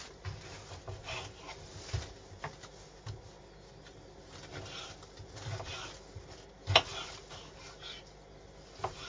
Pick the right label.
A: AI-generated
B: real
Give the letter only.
B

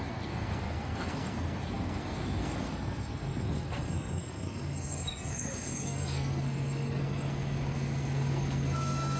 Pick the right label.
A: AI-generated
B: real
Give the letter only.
A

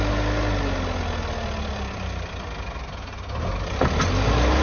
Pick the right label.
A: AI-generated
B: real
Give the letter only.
B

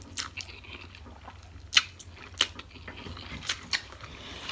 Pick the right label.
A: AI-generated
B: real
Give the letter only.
B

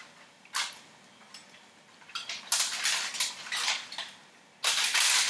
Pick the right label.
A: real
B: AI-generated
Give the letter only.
A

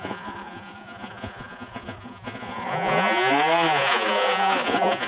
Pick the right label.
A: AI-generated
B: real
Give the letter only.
A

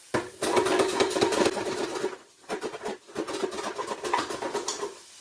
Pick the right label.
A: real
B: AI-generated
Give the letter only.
A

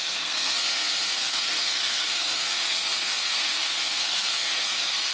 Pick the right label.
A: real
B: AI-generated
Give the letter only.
B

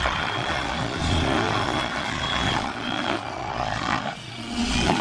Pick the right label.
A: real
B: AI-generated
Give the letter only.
B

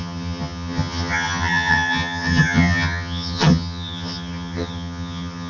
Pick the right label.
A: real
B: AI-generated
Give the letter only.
B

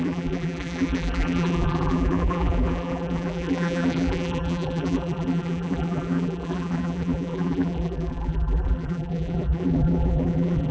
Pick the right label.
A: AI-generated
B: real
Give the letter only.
A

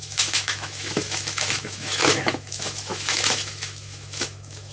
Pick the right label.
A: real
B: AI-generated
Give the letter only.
B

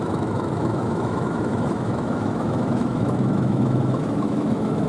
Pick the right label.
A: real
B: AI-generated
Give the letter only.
B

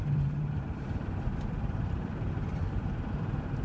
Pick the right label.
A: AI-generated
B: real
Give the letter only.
A